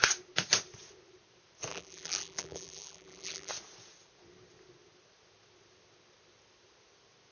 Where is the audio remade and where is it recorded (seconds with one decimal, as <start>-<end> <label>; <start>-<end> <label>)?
0.0-1.7 recorded; 1.7-3.5 remade; 3.5-7.3 recorded